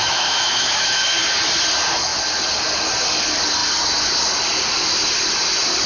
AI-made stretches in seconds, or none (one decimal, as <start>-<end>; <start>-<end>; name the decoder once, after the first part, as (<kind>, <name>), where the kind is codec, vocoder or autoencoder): 0.0-1.2 (autoencoder, DAC-VAE)